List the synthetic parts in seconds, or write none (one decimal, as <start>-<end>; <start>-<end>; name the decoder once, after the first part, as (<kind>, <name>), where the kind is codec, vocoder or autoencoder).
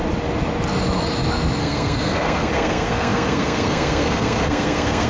1.6-5.1 (codec, SNAC)